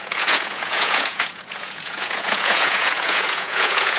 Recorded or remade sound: remade